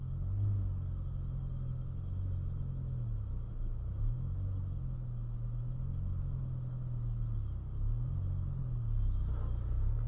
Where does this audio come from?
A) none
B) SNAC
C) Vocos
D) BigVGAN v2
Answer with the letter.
A